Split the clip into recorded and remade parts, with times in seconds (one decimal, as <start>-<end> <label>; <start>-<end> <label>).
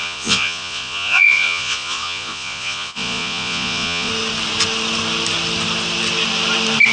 0.0-4.1 remade; 4.1-6.9 recorded